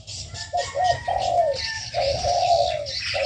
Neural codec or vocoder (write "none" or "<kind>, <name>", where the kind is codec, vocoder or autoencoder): none